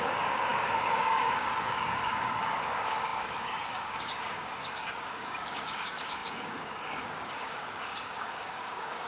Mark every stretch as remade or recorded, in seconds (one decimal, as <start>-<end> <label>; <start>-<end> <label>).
0.0-9.1 remade